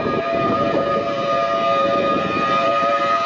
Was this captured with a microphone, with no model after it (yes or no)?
no